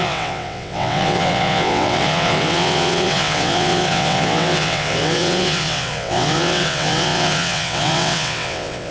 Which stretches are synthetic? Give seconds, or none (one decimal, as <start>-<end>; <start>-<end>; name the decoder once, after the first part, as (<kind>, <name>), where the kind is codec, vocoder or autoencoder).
0.0-8.9 (vocoder, WaveNeXt)